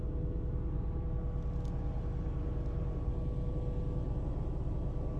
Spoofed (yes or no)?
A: no